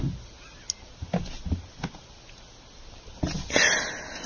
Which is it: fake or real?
real